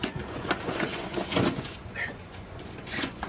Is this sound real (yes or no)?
no